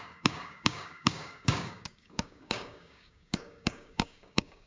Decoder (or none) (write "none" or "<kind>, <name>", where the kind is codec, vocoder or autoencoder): codec, DAC